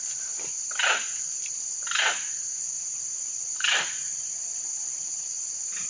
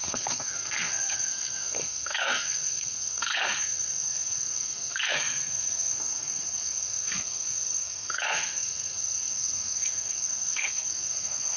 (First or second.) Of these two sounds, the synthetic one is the second